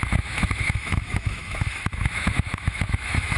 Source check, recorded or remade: remade